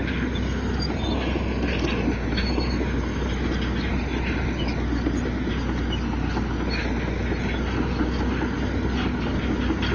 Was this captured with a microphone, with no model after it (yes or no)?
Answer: yes